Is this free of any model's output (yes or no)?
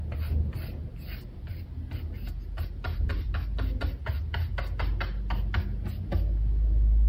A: yes